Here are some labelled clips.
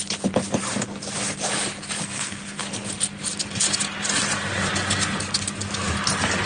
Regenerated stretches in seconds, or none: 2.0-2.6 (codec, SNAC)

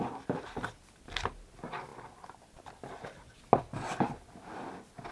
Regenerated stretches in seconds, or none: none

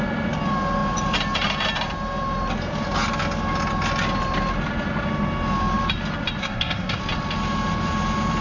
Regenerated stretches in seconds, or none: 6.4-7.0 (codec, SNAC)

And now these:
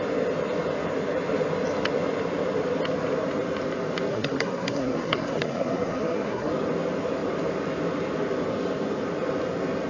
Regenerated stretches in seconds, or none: 4.1-6.5 (codec, SNAC)

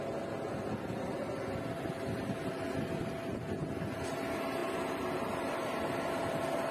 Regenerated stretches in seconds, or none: none